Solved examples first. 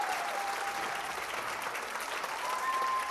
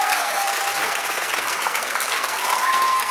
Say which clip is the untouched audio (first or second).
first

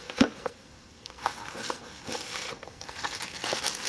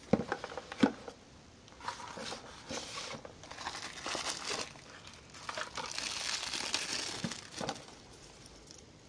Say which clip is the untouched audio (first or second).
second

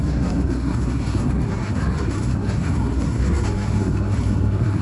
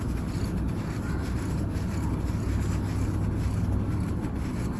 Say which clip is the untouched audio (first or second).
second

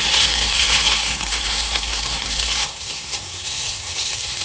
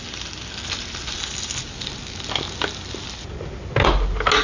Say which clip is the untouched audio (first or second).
second